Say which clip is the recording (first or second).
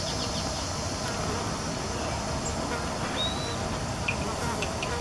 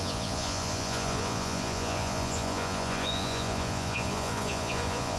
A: first